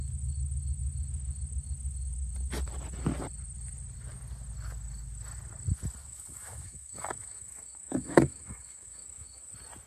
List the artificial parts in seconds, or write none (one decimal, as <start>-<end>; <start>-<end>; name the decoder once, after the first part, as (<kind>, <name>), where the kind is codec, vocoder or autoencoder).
6.0-9.5 (autoencoder, DAC-VAE)